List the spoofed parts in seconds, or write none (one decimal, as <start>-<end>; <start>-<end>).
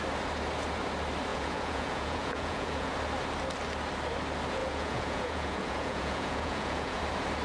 1.3-2.9; 4.6-7.0